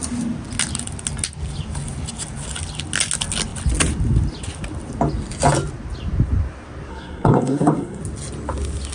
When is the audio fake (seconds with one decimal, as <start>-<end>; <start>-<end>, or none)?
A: 6.9-8.0